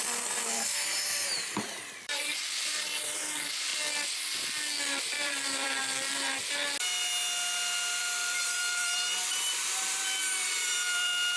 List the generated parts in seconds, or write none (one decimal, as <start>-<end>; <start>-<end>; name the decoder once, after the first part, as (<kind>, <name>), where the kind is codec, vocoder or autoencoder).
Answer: 0.0-3.7 (vocoder, BigVGAN v2); 5.0-5.8; 8.0-11.4